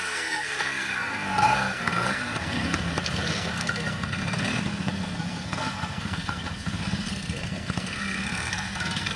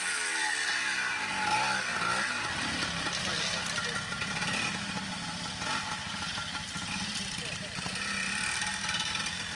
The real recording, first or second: second